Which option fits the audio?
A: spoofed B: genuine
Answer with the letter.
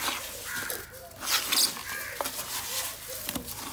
B